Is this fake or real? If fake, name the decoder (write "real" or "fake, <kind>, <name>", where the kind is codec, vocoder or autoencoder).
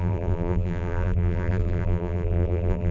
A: fake, vocoder, BigVGAN v2